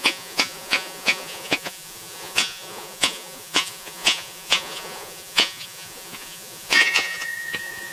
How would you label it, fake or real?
fake